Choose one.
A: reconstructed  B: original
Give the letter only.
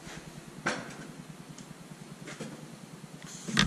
B